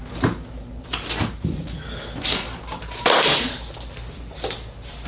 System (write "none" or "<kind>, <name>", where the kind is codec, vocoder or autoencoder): none